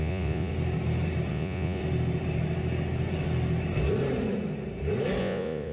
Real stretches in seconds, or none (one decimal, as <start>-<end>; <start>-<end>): 0.5-1.3; 1.8-5.2